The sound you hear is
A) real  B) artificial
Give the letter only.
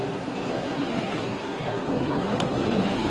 B